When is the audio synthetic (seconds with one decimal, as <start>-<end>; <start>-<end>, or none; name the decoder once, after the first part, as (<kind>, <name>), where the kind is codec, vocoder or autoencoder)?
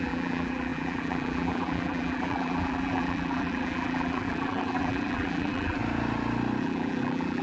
0.0-5.8 (vocoder, BigVGAN v2); 6.6-7.4